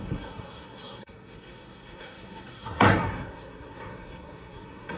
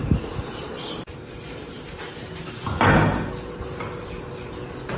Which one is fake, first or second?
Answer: first